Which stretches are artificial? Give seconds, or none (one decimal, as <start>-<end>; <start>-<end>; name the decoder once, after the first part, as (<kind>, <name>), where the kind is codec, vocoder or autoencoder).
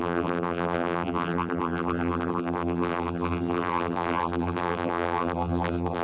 0.0-6.0 (vocoder, BigVGAN v2)